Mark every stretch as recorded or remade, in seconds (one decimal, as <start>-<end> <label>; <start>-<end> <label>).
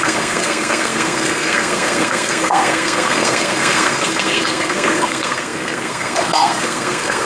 0.0-7.3 remade